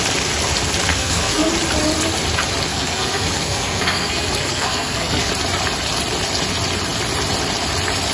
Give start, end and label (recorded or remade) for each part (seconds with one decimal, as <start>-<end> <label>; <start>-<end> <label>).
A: 0.0-0.9 recorded; 0.9-1.5 remade; 1.5-2.7 recorded; 2.7-5.3 remade; 5.3-8.1 recorded